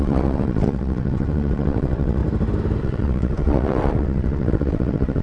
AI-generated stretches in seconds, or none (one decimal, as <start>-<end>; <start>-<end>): 0.0-2.2; 2.8-5.2